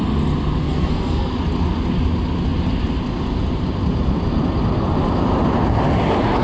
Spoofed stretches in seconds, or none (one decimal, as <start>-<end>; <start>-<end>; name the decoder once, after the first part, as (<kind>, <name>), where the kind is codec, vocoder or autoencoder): 0.6-1.3 (codec, SNAC)